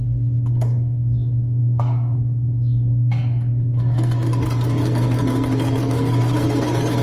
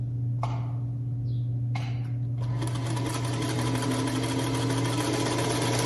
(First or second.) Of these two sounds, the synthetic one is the first